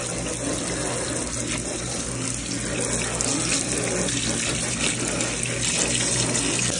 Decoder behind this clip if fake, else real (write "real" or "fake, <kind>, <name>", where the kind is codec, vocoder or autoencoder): real